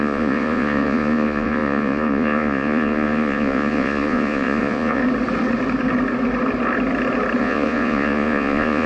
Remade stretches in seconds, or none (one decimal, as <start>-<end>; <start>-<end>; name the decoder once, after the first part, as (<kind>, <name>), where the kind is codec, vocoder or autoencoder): 0.0-5.0 (vocoder, Vocos); 7.4-8.9